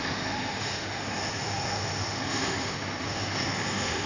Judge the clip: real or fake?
fake